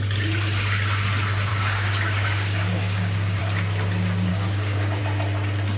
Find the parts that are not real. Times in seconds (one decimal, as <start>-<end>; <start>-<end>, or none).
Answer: 1.5-3.4; 4.3-5.0